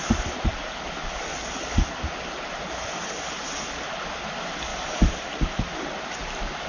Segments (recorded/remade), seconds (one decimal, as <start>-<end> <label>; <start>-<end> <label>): 0.0-1.3 recorded; 1.3-3.5 remade; 3.5-6.7 recorded